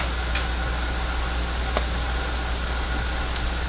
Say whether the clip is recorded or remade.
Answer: recorded